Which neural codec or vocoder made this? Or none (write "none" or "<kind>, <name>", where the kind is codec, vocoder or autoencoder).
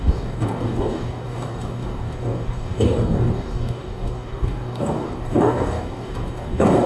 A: codec, DAC